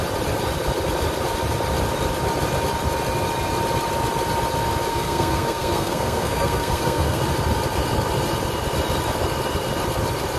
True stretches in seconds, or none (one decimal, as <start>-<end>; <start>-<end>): 0.0-4.9; 7.2-10.4